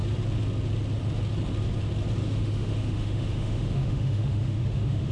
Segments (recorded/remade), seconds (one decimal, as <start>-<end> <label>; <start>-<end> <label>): 0.0-2.2 recorded; 2.2-5.1 remade